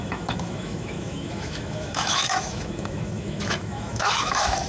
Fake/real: fake